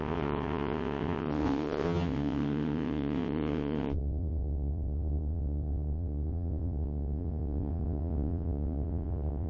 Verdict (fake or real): fake